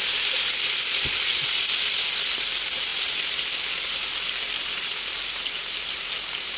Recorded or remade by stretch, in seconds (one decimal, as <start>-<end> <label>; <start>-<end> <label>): 0.0-6.6 recorded